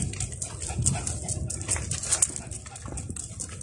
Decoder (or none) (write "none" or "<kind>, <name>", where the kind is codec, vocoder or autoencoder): none